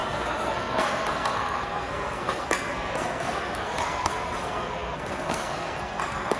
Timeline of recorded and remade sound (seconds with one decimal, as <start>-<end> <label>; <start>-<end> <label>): 0.0-6.4 remade